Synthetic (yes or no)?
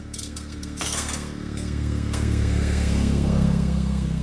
yes